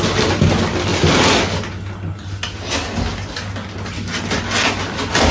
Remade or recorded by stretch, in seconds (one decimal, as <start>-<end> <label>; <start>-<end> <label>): 0.0-5.3 recorded

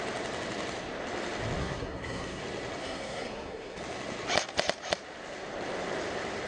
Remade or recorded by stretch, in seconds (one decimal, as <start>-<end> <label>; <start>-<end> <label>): 0.0-1.6 recorded; 1.6-2.4 remade; 2.4-2.8 recorded; 2.8-3.8 remade; 3.8-6.5 recorded

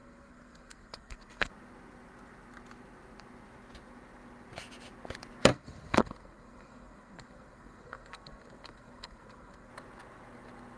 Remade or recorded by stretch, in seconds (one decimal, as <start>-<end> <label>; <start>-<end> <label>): 0.0-1.5 remade; 1.5-5.5 recorded; 5.5-9.7 remade; 9.7-10.8 recorded